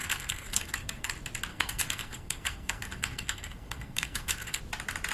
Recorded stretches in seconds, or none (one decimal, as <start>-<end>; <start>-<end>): 1.1-1.5; 4.6-5.1